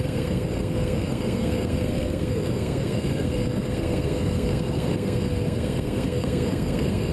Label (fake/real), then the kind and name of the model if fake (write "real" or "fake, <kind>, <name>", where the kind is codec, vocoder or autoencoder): fake, codec, SNAC